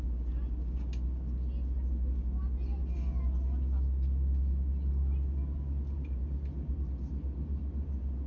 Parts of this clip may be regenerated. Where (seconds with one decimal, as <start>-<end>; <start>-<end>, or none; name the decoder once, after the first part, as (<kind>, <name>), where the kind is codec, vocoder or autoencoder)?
none

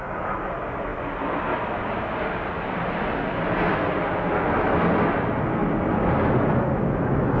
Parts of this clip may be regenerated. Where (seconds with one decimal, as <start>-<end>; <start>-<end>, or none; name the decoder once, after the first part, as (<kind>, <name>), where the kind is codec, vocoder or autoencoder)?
none

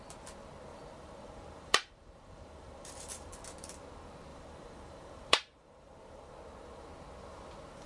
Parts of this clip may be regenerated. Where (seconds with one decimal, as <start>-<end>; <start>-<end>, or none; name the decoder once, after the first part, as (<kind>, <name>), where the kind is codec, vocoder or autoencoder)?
0.7-3.3 (vocoder, BigVGAN v2); 4.3-6.3